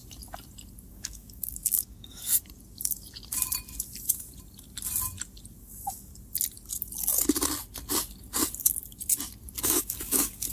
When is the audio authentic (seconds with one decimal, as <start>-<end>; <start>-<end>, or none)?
0.0-0.9; 2.3-5.6; 6.1-9.6